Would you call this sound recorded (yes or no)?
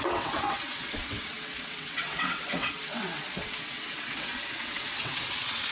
no